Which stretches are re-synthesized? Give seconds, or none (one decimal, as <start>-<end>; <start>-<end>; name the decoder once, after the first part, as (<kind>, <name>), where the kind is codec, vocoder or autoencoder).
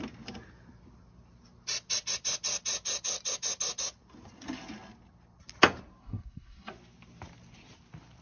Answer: 6.0-6.7 (codec, SNAC)